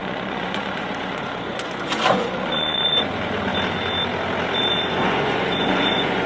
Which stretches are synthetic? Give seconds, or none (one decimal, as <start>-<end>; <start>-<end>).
0.0-3.5; 4.6-6.3